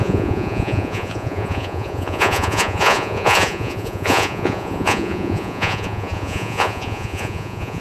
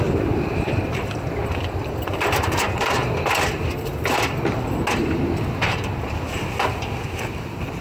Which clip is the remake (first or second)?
first